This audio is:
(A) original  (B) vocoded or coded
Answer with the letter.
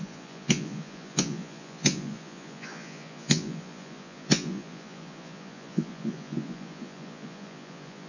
B